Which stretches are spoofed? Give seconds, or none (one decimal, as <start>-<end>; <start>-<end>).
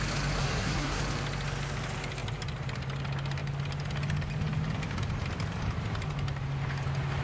0.4-1.0